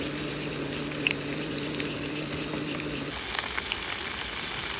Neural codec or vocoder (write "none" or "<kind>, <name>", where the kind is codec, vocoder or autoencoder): none